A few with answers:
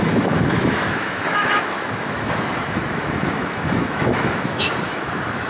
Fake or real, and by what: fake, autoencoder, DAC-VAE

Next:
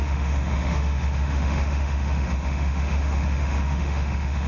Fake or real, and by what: fake, autoencoder, DAC-VAE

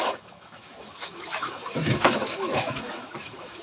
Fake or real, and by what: fake, autoencoder, DAC-VAE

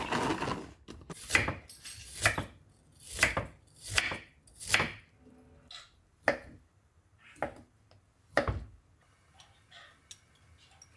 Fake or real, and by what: real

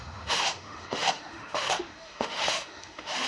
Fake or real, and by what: fake, autoencoder, DAC-VAE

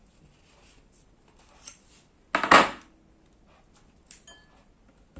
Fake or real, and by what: real